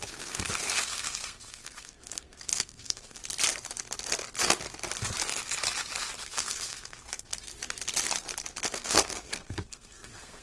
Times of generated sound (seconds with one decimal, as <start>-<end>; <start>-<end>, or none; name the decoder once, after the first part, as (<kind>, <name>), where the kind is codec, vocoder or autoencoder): 0.0-3.2 (codec, SNAC); 6.2-7.3; 8.7-10.4